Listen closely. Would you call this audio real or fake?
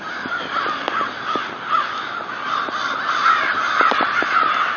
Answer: fake